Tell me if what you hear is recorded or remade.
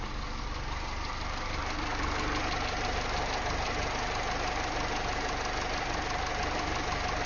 recorded